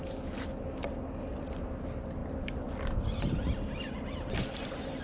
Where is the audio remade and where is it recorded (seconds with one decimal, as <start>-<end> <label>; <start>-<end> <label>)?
0.0-5.0 recorded